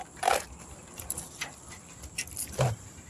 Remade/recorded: recorded